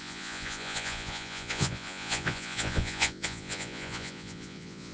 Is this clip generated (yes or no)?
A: yes